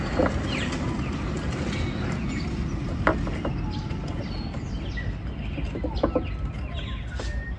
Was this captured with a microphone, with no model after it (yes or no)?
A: yes